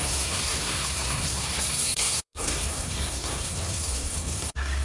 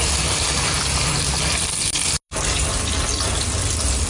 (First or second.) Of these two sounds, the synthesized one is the first